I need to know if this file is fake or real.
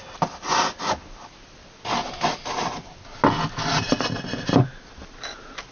real